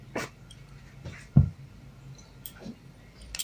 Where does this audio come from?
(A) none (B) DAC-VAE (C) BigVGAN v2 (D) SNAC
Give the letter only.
A